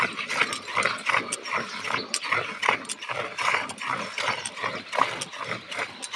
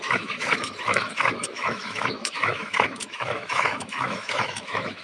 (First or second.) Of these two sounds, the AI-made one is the second